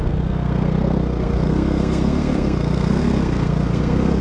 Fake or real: fake